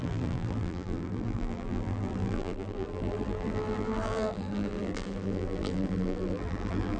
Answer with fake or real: fake